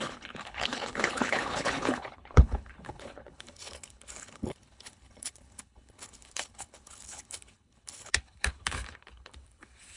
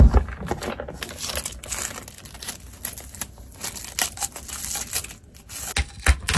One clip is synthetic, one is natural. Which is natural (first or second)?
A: second